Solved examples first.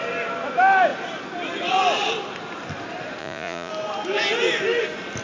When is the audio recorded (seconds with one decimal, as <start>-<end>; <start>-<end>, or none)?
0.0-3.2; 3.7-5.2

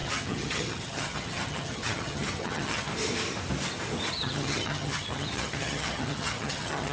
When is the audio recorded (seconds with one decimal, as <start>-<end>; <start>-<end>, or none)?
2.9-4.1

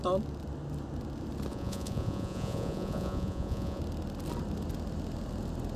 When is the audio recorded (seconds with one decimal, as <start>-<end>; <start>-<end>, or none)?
0.0-1.5; 3.8-5.8

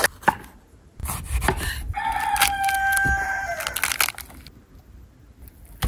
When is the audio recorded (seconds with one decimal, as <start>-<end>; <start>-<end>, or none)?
0.0-5.9

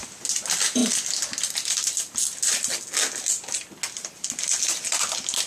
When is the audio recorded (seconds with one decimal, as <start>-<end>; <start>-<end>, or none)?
0.0-5.5

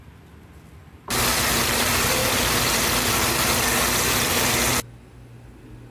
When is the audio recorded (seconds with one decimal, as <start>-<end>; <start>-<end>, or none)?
0.0-5.9

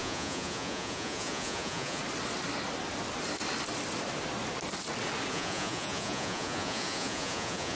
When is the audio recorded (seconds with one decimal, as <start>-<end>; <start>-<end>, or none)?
2.0-5.3

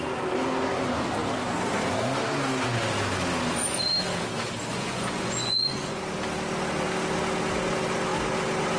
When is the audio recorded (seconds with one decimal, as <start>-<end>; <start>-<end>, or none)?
0.0-4.7; 6.0-8.8